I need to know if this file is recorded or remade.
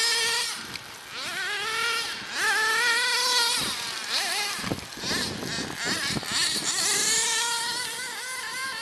recorded